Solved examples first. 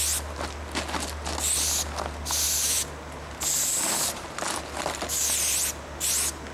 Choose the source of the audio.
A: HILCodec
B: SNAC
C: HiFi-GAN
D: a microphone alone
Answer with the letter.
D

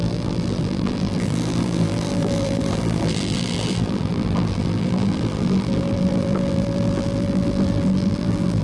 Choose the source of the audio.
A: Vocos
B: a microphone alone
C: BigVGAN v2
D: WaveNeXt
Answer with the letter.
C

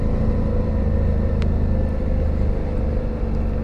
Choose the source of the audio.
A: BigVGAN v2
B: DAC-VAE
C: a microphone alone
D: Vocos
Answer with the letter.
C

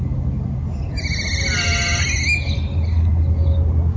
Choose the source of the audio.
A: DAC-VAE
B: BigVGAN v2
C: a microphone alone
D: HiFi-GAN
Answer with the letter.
C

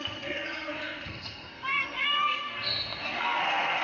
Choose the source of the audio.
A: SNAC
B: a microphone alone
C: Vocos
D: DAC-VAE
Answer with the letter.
A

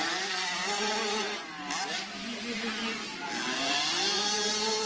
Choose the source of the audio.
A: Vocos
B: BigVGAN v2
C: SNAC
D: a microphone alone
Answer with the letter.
D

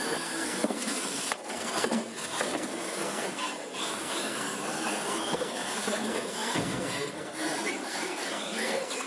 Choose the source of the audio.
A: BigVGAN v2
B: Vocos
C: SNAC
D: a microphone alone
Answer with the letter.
C